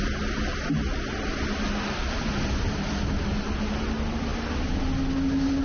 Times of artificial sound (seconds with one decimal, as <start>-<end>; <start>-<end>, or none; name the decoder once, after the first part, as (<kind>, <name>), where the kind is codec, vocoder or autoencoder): none